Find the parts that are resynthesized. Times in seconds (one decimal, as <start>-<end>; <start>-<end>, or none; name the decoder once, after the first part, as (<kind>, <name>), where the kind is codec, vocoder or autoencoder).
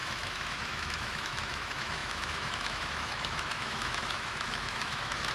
0.0-5.3 (autoencoder, DAC-VAE)